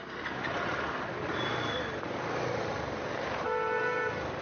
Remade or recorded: recorded